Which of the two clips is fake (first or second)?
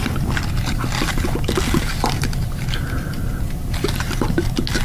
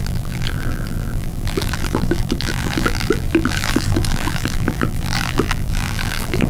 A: second